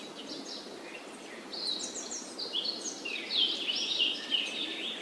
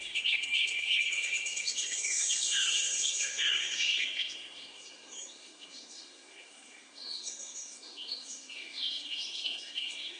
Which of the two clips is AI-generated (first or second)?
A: second